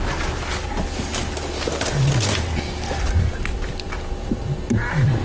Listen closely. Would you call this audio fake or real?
real